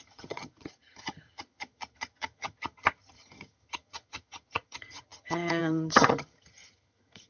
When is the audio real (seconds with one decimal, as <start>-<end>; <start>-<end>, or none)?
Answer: none